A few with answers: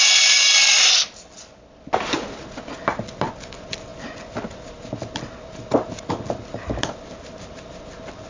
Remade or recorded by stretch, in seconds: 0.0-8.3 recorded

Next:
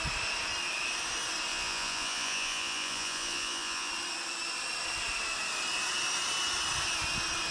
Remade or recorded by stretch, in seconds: 0.0-1.5 recorded; 1.5-3.9 remade; 3.9-7.5 recorded

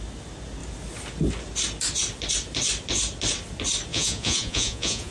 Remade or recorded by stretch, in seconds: 0.0-3.9 recorded; 3.9-5.1 remade

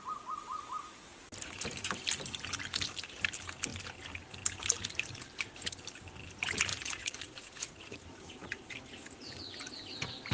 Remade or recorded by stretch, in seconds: 0.0-6.7 recorded; 6.7-8.7 remade; 8.7-10.3 recorded

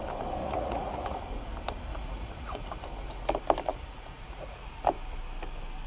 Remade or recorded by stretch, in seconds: 0.0-0.4 recorded; 0.4-1.2 remade; 1.2-1.9 recorded; 1.9-2.7 remade; 2.7-3.7 recorded; 3.7-4.8 remade; 4.8-5.9 recorded

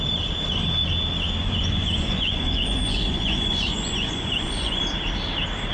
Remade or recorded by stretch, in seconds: 0.0-1.4 recorded; 1.4-4.8 remade; 4.8-5.7 recorded

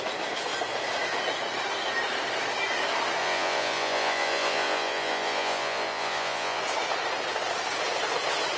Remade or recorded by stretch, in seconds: 0.0-3.2 recorded; 3.2-6.6 remade; 6.6-8.6 recorded